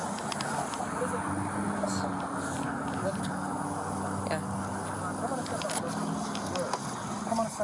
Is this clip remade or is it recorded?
recorded